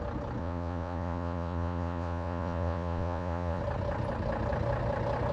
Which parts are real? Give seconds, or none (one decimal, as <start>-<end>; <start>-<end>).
0.0-0.4; 3.6-5.3